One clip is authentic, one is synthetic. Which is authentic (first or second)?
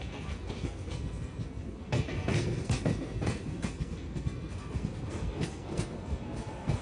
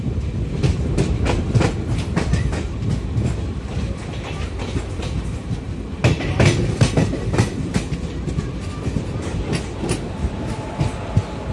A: second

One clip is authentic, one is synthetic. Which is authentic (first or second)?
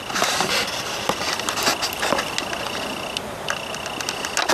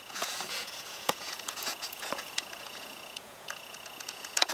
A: first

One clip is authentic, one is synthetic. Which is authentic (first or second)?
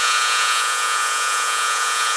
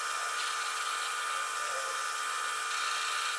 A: second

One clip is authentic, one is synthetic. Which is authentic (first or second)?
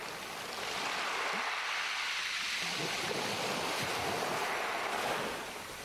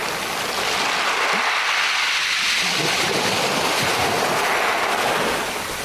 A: second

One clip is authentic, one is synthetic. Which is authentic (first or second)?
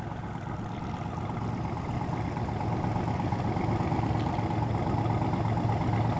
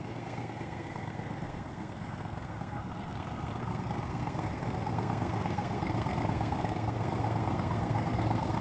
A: first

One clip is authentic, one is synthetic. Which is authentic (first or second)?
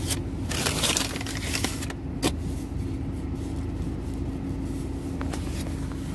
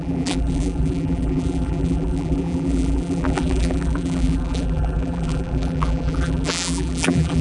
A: first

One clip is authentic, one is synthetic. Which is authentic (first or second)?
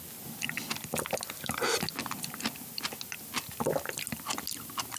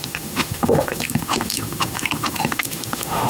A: first